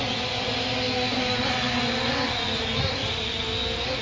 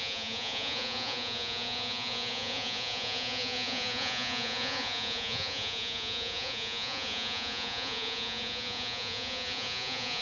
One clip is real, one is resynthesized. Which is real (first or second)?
first